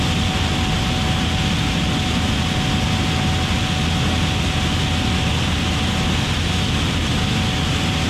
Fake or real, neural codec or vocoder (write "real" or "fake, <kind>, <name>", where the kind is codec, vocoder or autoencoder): real